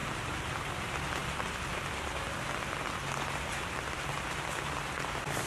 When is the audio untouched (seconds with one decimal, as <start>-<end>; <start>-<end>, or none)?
0.0-5.5